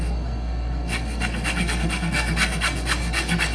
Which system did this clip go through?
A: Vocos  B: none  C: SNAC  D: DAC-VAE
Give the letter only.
C